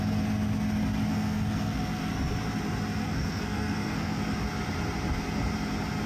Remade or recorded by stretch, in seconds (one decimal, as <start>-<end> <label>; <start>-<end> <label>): 0.0-1.1 recorded; 1.1-2.1 remade; 2.1-3.0 recorded; 3.0-4.2 remade; 4.2-6.1 recorded